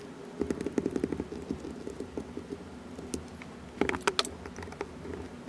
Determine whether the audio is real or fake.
real